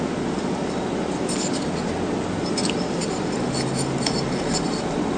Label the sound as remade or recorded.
recorded